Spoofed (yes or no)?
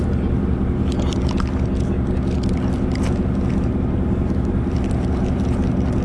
no